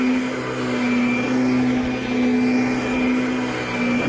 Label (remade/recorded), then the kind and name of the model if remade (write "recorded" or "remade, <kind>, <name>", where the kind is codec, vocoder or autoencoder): recorded